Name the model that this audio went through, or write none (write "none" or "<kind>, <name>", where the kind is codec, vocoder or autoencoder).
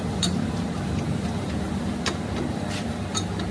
none